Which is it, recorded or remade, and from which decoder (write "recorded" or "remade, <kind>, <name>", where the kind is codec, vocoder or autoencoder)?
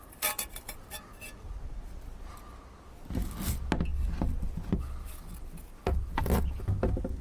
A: recorded